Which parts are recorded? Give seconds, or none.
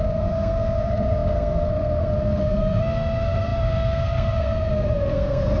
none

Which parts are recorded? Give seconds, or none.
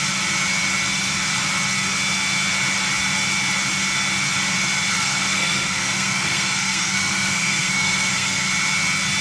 0.0-4.9; 8.5-9.2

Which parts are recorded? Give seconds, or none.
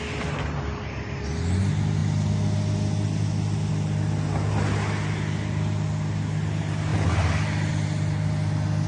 0.0-8.9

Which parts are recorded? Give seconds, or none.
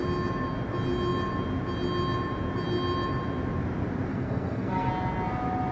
0.0-4.1; 4.9-5.7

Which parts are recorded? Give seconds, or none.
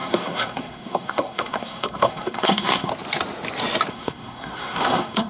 2.9-3.9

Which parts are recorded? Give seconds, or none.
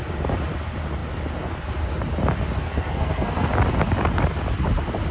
0.0-2.6; 3.5-5.1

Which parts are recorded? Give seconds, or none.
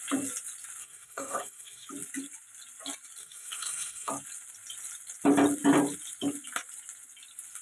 0.0-0.8; 1.9-3.2; 4.1-7.6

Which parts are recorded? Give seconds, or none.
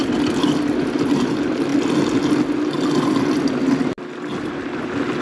0.0-5.2